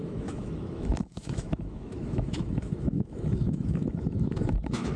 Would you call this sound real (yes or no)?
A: no